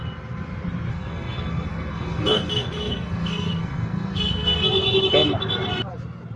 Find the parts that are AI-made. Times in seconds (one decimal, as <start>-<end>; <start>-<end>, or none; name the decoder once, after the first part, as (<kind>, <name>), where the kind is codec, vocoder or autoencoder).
0.9-4.7 (codec, SNAC)